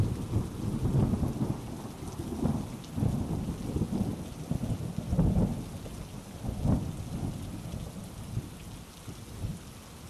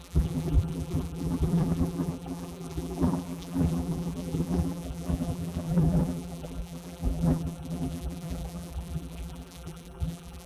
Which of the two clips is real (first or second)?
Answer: first